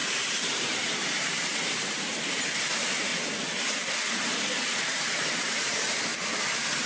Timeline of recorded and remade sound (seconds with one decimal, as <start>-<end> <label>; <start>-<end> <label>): 0.0-3.1 remade; 3.1-4.2 recorded; 4.2-6.1 remade; 6.1-6.9 recorded